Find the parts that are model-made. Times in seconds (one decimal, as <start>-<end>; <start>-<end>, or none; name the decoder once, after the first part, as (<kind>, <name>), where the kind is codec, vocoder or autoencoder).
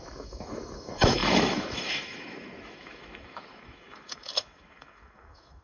0.0-5.6 (autoencoder, DAC-VAE)